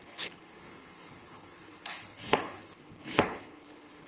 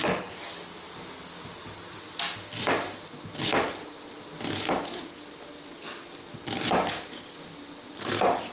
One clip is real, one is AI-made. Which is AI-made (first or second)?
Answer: first